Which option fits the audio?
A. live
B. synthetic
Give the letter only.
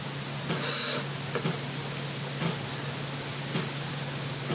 A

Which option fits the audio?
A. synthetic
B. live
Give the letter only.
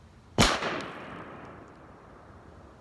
B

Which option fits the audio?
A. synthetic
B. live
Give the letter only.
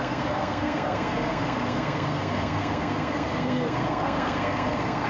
A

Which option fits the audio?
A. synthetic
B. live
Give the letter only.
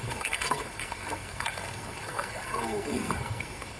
A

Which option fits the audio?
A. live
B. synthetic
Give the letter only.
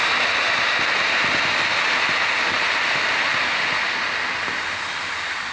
A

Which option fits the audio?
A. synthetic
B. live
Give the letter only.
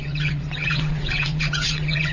A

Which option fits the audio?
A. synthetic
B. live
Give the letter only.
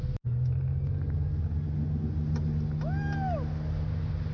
B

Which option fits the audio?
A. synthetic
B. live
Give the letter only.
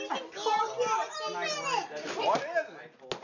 B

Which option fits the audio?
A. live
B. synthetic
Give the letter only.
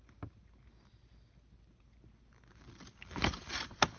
A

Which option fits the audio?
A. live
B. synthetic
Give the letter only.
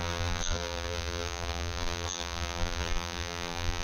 B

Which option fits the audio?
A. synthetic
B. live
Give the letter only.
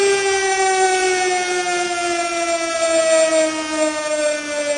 B